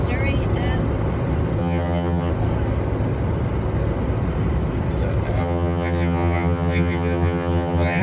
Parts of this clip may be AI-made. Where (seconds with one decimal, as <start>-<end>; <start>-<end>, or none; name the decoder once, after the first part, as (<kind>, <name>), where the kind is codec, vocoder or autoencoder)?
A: 1.6-2.3 (vocoder, HiFi-GAN); 5.4-8.0